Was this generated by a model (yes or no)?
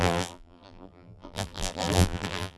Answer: yes